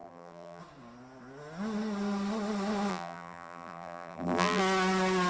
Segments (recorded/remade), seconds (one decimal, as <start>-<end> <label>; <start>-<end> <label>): 0.0-0.6 remade; 0.6-2.9 recorded; 2.9-4.6 remade; 4.6-5.3 recorded